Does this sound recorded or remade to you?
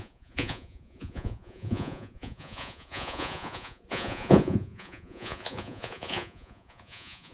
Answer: remade